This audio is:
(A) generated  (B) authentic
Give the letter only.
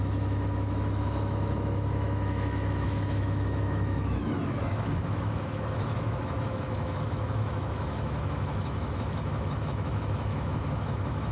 A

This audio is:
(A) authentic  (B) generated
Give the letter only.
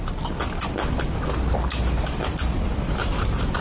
A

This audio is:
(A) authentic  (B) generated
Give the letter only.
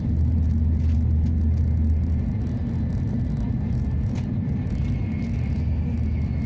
A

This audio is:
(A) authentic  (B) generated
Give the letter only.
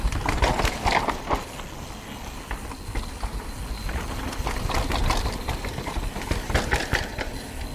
A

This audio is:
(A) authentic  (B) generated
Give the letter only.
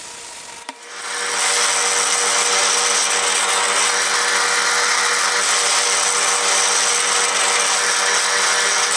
A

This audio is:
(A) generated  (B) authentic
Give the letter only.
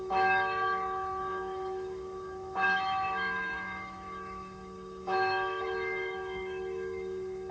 A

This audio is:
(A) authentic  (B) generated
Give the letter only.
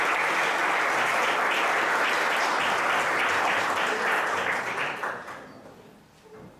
A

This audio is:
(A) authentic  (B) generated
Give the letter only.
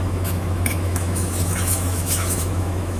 B